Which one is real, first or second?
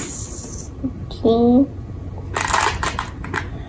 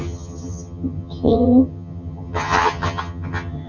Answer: first